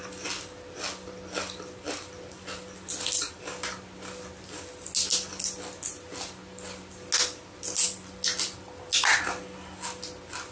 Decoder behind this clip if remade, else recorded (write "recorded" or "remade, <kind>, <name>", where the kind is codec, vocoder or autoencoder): recorded